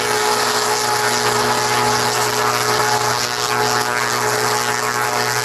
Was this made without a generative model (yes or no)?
yes